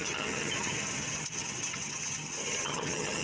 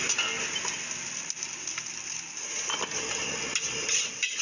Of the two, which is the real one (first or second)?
second